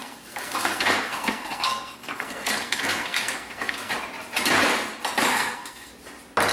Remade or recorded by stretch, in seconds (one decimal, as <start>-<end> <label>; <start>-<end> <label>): 0.0-3.9 remade; 3.9-5.3 recorded; 5.3-5.9 remade; 5.9-6.5 recorded